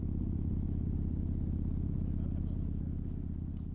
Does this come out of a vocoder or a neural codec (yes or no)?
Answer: no